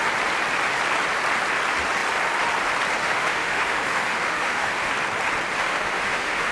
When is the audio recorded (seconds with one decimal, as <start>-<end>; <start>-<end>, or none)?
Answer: 0.0-3.0; 4.9-5.6